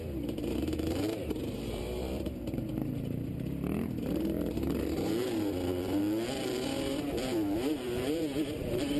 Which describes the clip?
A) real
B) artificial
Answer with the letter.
B